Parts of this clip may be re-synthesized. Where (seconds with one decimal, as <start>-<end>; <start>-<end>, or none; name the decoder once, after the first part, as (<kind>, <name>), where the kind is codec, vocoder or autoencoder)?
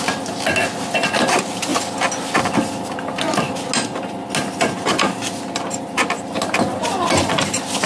none